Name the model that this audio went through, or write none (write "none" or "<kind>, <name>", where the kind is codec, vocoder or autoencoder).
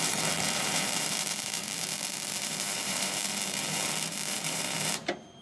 vocoder, BigVGAN v2